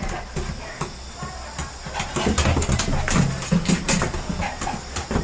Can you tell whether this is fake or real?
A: real